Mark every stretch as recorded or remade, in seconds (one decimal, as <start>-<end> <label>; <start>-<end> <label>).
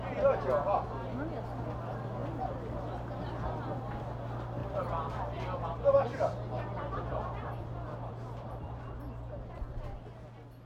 0.0-4.6 recorded; 4.6-8.8 remade; 8.8-10.7 recorded